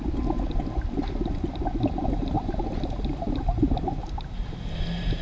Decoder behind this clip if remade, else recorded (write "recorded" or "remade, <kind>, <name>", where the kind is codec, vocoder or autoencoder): recorded